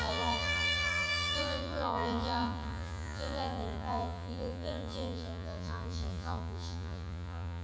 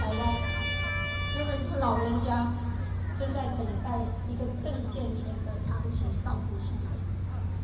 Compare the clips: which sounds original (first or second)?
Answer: second